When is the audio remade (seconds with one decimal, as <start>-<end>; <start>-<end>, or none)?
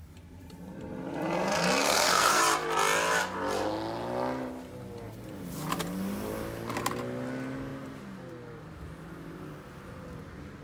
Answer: 1.8-2.4